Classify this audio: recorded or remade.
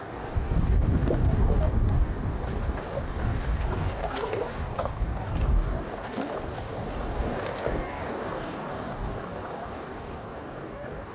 remade